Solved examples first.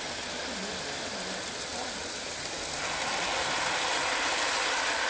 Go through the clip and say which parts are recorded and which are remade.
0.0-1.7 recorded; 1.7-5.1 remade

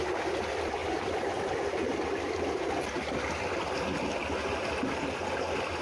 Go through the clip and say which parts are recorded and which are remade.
0.0-0.8 recorded; 0.8-1.5 remade; 1.5-5.8 recorded